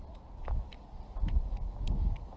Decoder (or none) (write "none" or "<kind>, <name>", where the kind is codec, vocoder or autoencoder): none